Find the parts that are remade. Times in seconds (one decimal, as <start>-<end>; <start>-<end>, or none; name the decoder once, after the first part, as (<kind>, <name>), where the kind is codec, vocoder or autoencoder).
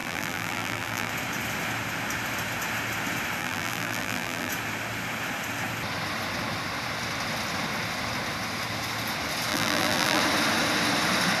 0.0-1.1 (vocoder, BigVGAN v2); 3.4-4.5; 9.5-10.2